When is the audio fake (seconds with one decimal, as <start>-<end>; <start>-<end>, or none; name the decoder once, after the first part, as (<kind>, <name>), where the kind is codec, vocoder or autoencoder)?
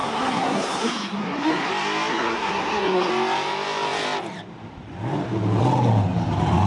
0.0-1.7 (codec, SNAC); 2.1-3.1